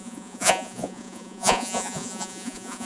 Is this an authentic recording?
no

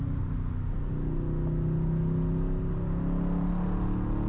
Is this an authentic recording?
yes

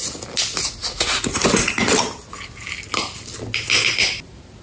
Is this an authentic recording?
yes